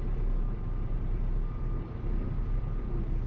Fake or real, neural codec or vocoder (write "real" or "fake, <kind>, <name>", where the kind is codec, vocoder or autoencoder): fake, vocoder, BigVGAN v2